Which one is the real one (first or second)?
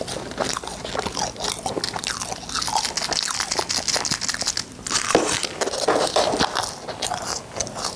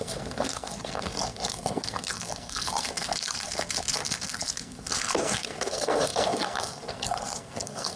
first